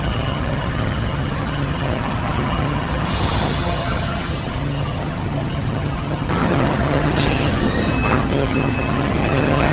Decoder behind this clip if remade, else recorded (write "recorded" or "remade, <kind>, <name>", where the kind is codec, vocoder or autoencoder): remade, vocoder, HiFi-GAN